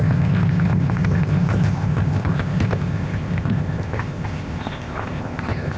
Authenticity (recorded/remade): remade